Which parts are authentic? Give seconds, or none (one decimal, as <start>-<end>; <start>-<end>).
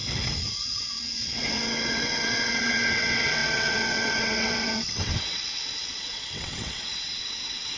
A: none